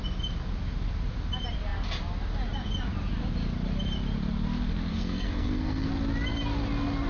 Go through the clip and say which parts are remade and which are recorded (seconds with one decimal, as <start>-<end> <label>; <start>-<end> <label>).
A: 0.0-4.9 recorded; 4.9-5.9 remade; 5.9-7.1 recorded